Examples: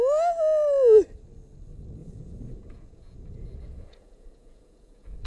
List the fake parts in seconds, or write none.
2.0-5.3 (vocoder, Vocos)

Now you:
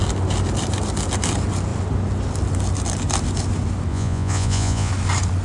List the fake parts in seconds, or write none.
3.9-4.9 (vocoder, Vocos)